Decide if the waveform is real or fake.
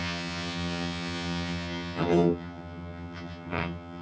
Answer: fake